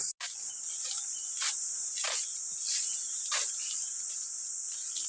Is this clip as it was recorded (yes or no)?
yes